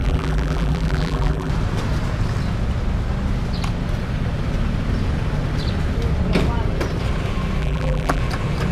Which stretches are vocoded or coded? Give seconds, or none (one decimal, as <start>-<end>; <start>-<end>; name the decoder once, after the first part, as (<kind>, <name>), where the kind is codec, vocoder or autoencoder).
0.0-1.5 (vocoder, BigVGAN v2); 7.6-8.2